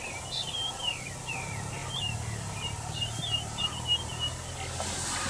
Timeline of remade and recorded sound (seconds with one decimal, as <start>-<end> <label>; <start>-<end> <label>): 0.0-5.3 recorded

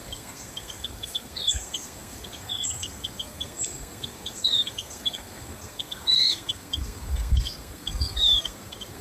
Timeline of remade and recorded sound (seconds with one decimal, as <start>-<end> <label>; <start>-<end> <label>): 0.0-9.0 remade